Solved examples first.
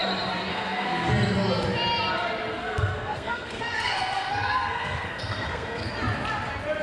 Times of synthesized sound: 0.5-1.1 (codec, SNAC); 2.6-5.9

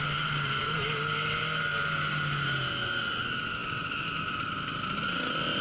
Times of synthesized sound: none

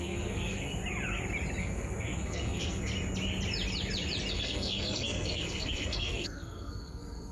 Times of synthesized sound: 0.0-0.8 (codec, SNAC); 1.6-2.9; 4.3-7.3